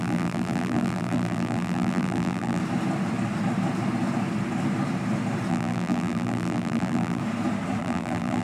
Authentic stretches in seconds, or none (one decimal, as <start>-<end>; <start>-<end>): 2.6-5.5; 7.2-7.8